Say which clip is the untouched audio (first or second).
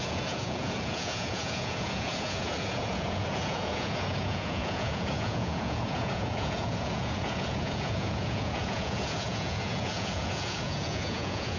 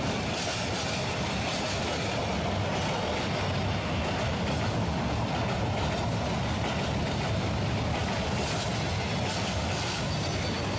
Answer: second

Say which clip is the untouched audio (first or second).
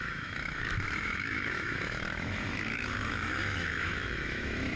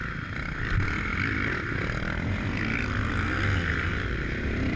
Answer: second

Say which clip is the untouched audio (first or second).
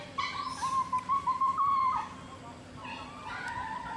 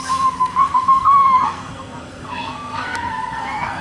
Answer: first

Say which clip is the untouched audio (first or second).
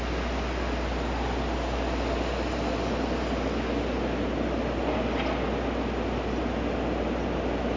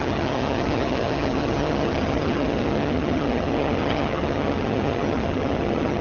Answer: first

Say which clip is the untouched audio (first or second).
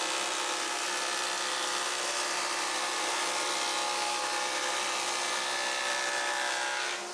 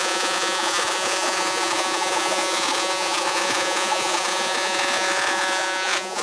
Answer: first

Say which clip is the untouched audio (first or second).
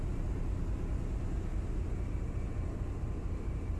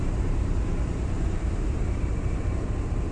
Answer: first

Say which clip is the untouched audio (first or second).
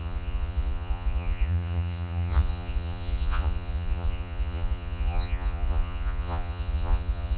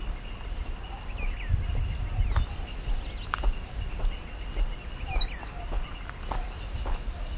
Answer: second